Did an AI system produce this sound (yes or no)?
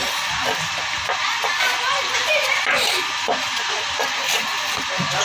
no